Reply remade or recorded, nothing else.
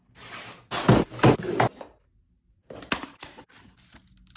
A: recorded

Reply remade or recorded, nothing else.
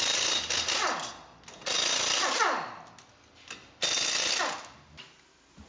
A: recorded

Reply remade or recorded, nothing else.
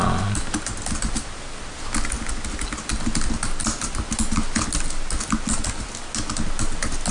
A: recorded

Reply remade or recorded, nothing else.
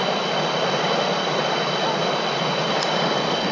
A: recorded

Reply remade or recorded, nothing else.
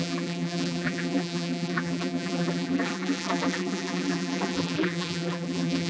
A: remade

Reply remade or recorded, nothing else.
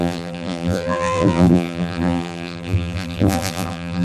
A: remade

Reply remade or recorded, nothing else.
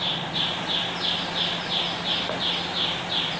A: recorded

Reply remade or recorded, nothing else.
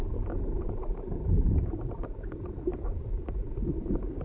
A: remade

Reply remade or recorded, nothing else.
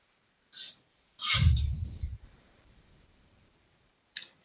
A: remade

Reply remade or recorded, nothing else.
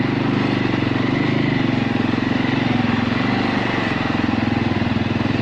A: recorded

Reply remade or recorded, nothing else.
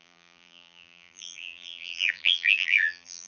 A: remade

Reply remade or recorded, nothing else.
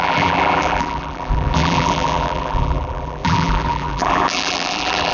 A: remade